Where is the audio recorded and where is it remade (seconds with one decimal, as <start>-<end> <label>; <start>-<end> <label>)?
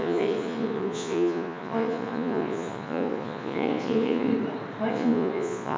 0.0-4.3 remade; 4.3-4.9 recorded; 4.9-5.8 remade